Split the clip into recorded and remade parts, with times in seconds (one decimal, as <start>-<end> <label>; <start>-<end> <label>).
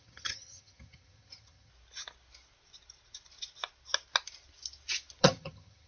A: 0.0-1.7 remade; 1.7-5.2 recorded; 5.2-5.9 remade